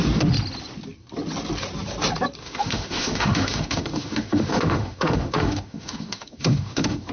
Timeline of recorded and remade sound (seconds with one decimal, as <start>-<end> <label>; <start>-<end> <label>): 0.0-2.4 recorded; 2.4-7.1 remade